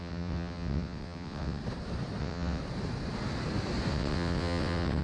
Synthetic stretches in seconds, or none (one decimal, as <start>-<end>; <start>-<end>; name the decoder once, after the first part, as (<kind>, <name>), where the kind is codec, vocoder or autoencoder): 0.0-1.6 (vocoder, WaveNeXt); 2.2-2.6; 3.9-5.0